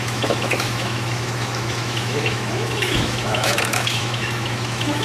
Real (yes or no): no